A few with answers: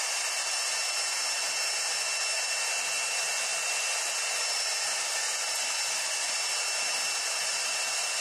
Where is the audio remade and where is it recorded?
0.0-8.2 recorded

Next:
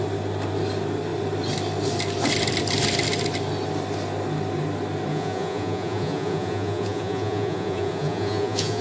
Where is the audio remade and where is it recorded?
0.0-5.1 recorded; 5.1-8.8 remade

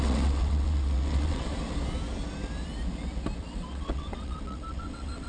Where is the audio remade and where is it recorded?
0.0-1.5 remade; 1.5-3.4 recorded; 3.4-5.3 remade

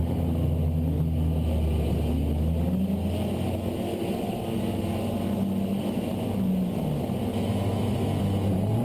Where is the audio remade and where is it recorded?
0.0-7.3 recorded; 7.3-8.2 remade; 8.2-8.8 recorded